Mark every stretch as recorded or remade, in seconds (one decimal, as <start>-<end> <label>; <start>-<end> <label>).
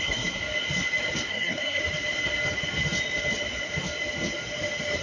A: 0.0-0.4 remade; 0.4-1.3 recorded; 1.3-1.8 remade; 1.8-5.0 recorded